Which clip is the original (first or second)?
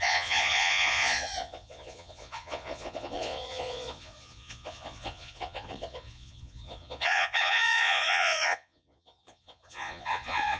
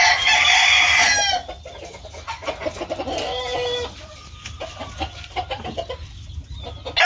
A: second